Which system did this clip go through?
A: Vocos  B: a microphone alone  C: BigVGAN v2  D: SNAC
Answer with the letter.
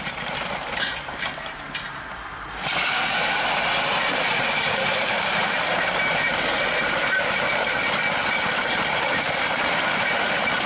C